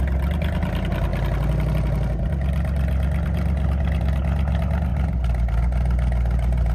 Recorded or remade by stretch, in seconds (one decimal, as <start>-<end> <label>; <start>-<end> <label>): 0.0-6.7 recorded